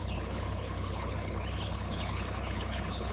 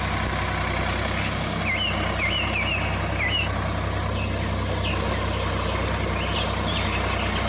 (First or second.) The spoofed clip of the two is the first